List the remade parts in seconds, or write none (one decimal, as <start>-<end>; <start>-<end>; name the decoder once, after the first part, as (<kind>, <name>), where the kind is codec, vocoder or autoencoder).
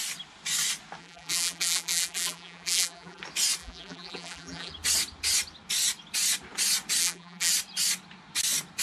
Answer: 1.0-3.2 (vocoder, BigVGAN v2); 3.6-4.7; 7.0-7.5